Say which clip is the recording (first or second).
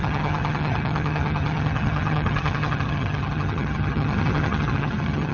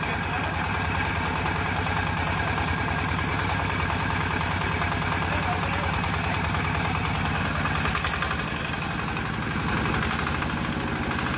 second